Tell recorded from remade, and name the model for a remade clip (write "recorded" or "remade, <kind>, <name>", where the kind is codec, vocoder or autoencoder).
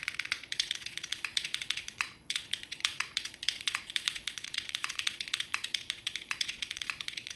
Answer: remade, vocoder, Vocos